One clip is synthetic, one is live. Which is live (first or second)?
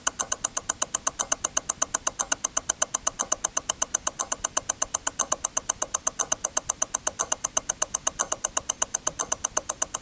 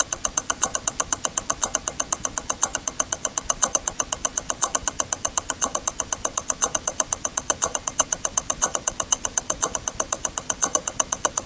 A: first